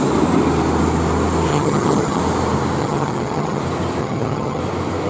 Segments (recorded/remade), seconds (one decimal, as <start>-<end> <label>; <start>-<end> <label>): 0.0-1.5 recorded; 1.5-2.2 remade; 2.2-2.8 recorded; 2.8-3.6 remade; 3.6-4.0 recorded; 4.0-4.6 remade; 4.6-5.1 recorded